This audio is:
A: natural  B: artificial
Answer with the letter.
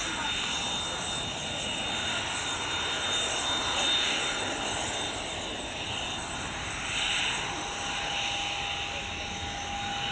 A